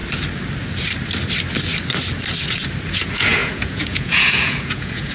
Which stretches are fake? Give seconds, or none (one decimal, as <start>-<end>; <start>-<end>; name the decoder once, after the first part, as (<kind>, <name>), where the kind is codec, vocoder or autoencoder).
3.0-5.1 (vocoder, Vocos)